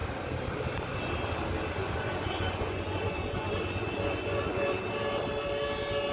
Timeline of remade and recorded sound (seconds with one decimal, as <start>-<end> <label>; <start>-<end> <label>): 0.0-1.8 recorded; 1.8-4.8 remade; 4.8-6.1 recorded